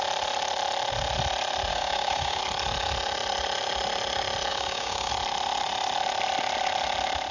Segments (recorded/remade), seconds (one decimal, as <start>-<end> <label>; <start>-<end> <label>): 0.0-1.7 recorded; 1.7-2.4 remade; 2.4-4.5 recorded; 4.5-5.1 remade; 5.1-7.3 recorded